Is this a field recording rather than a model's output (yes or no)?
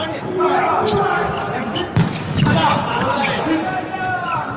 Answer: yes